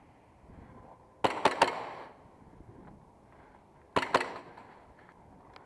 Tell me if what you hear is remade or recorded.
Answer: recorded